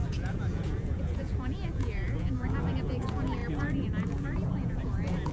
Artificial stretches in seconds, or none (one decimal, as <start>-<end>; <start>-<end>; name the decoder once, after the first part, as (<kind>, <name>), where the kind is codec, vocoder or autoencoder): 0.0-3.4 (vocoder, Vocos); 4.1-5.3